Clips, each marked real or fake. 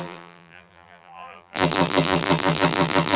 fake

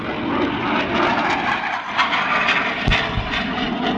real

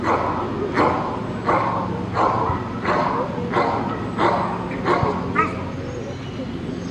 real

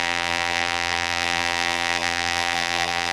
fake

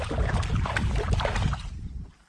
real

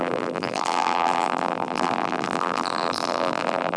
fake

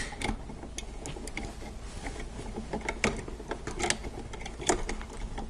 real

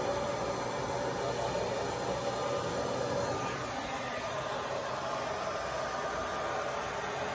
real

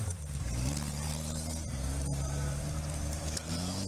fake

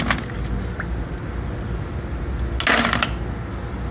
real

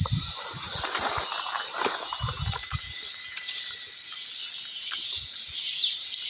fake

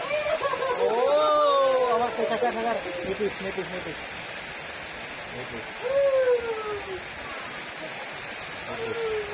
real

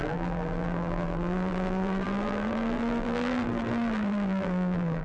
fake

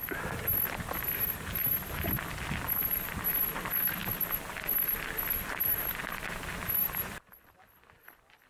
real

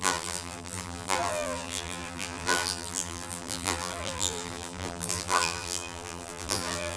fake